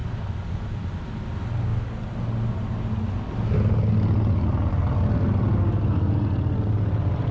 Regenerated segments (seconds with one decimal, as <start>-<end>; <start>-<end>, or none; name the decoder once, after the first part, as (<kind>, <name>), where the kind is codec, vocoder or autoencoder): 0.0-1.1 (vocoder, BigVGAN v2)